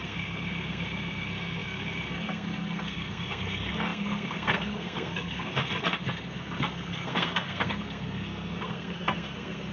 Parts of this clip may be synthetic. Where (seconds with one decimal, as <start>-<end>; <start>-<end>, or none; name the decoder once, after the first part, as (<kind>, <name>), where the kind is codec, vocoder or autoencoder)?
0.0-9.7 (codec, SNAC)